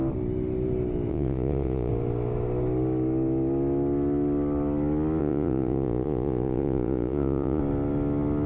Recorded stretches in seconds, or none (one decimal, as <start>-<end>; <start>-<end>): 0.0-1.1; 1.9-5.2; 7.6-8.5